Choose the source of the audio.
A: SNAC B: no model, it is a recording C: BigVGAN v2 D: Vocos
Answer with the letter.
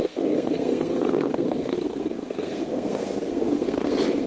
A